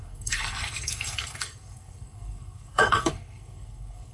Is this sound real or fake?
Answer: fake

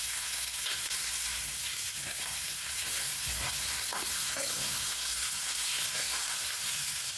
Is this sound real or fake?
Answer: fake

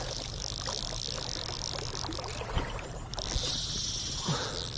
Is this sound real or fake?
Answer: real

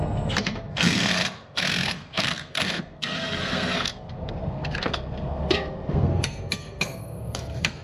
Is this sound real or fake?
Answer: fake